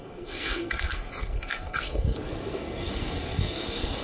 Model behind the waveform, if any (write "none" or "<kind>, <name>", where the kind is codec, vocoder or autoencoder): codec, SNAC